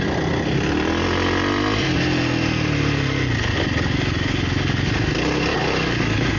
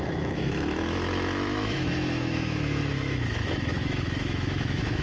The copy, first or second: second